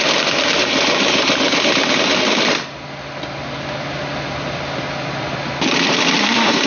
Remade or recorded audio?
recorded